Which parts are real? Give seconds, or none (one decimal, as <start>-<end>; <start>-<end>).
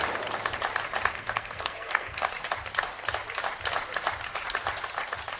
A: 0.0-1.1; 2.3-5.4